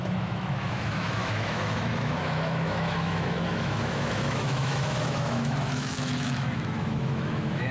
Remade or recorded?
remade